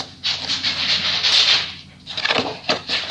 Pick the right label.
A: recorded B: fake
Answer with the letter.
A